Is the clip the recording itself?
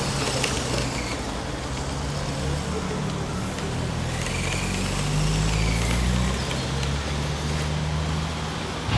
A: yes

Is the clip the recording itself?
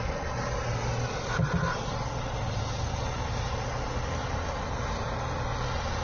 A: yes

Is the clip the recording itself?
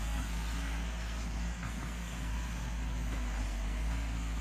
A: no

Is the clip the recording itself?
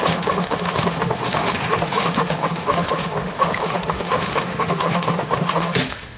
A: no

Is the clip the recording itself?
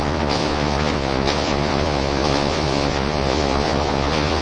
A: no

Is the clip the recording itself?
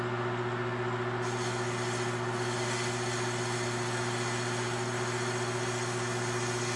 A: yes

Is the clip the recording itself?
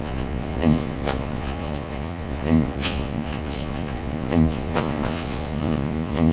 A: no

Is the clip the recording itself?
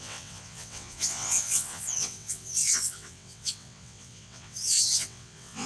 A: no